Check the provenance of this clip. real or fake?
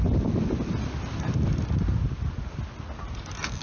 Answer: real